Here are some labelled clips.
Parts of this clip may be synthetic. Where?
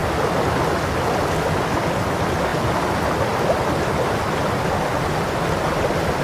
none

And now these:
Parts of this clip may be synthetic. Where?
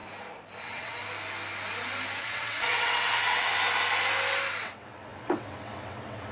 0.6-1.0 (vocoder, WaveNeXt); 2.2-3.5; 4.6-6.3